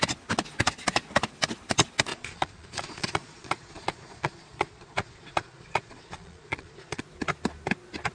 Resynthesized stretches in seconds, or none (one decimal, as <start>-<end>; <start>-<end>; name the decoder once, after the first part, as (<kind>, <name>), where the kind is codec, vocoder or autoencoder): 2.1-7.0 (vocoder, Vocos)